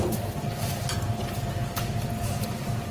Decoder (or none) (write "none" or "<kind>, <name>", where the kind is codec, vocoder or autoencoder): none